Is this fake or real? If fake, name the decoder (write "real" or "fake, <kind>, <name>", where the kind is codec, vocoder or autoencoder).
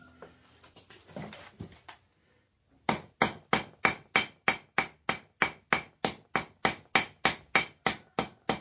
real